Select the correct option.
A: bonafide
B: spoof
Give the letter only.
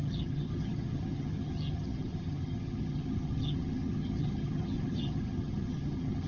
B